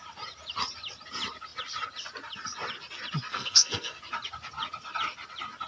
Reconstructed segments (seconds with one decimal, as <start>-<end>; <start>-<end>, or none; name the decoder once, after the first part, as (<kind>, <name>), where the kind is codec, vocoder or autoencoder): 3.3-4.0 (codec, SNAC)